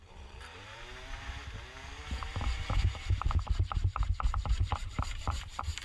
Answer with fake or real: fake